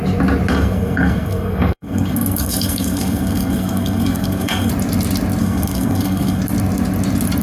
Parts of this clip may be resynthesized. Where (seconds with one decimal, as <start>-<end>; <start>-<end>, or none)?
0.5-4.7; 5.4-6.4